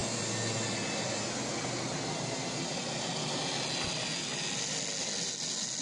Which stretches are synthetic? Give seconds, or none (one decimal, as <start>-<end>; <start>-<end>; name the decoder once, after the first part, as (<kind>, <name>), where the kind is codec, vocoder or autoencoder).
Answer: none